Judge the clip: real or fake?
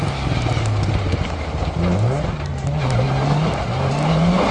real